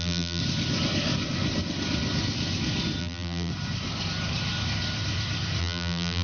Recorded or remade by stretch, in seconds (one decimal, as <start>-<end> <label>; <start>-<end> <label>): 0.0-0.4 remade; 0.4-3.0 recorded; 3.0-3.5 remade; 3.5-5.6 recorded; 5.6-6.2 remade